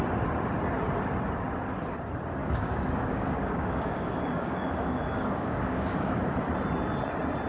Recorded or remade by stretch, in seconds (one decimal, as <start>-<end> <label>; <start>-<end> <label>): 0.0-2.4 recorded; 2.4-6.3 remade; 6.3-7.5 recorded